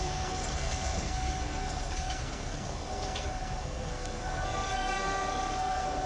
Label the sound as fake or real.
fake